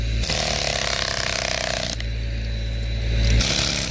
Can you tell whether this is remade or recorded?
recorded